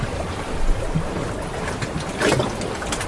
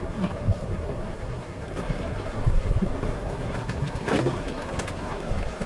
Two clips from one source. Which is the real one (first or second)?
first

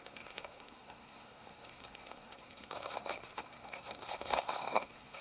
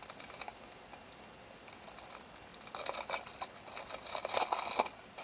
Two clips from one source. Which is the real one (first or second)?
second